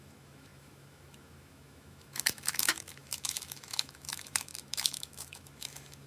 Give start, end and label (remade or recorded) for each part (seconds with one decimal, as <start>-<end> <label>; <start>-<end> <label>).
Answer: 0.0-6.1 remade